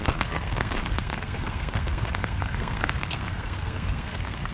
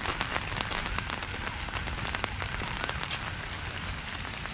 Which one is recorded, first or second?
second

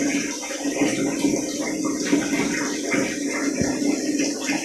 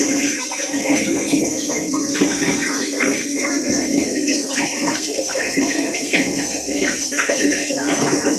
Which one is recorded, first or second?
first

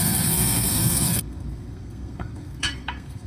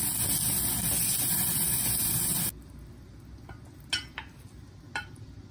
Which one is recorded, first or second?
second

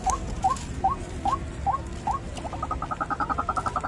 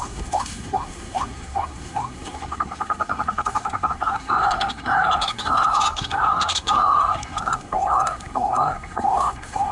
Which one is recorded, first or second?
first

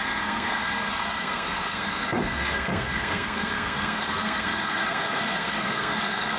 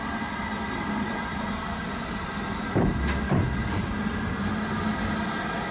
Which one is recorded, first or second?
second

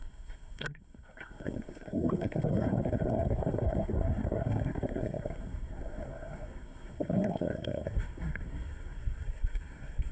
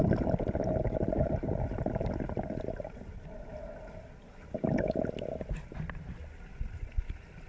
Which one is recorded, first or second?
second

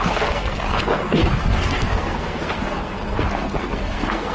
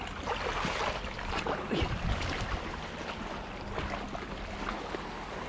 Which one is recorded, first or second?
second